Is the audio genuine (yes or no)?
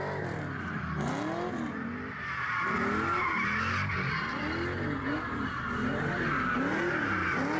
yes